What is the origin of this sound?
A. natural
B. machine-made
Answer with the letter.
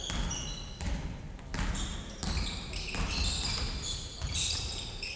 A